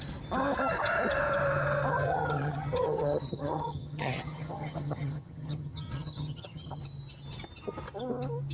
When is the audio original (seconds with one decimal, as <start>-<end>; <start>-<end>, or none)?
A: 0.0-1.9; 6.8-8.5

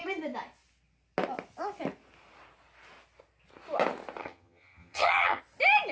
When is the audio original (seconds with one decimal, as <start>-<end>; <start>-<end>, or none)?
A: 0.0-4.2; 5.4-5.9

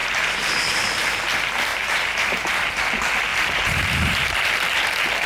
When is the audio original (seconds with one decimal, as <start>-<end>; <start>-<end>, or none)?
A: 0.0-1.7; 2.8-3.3; 4.5-5.3

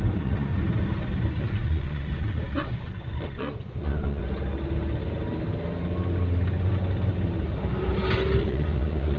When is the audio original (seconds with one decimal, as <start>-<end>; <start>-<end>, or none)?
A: 0.5-1.4; 4.2-8.4

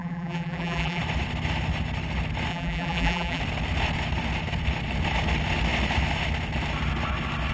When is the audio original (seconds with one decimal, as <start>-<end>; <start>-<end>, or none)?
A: 1.0-2.5; 3.4-7.5

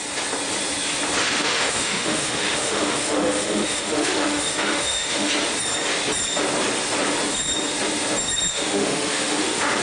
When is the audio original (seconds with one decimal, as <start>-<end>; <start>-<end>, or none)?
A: 0.0-1.2; 5.3-8.5